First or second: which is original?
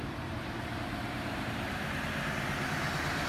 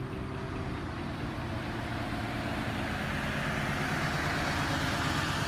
second